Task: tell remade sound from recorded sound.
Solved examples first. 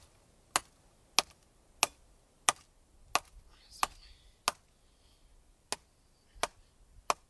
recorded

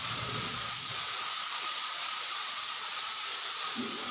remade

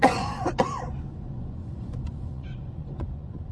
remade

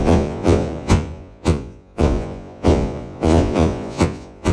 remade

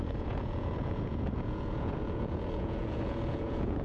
remade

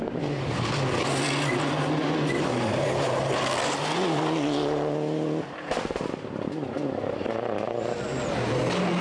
recorded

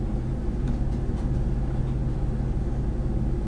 recorded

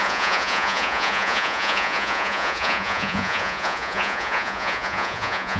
remade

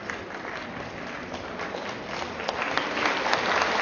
recorded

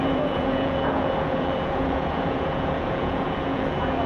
remade